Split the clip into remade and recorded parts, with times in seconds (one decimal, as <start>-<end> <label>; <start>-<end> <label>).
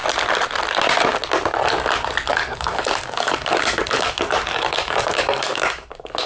0.0-2.3 recorded; 2.3-6.3 remade